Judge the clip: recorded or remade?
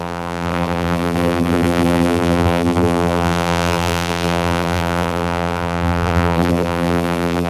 remade